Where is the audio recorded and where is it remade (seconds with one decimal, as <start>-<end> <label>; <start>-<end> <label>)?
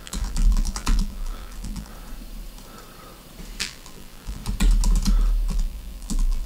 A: 0.0-1.9 remade; 1.9-3.6 recorded; 3.6-4.4 remade; 4.4-5.5 recorded; 5.5-6.5 remade